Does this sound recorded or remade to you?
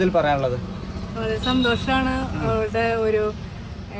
recorded